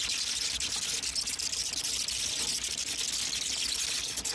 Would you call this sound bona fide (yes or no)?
yes